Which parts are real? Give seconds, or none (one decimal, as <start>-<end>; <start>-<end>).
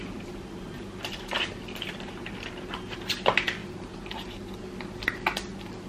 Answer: 1.5-3.6; 4.7-5.9